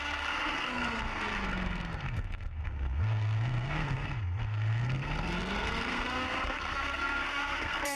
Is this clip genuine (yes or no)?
no